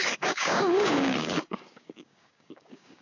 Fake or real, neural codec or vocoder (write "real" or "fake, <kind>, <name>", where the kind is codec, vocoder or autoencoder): fake, codec, DAC